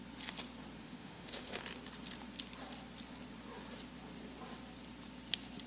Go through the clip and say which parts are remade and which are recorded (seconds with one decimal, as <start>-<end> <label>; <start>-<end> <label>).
0.0-0.8 recorded; 0.8-1.6 remade; 1.6-5.7 recorded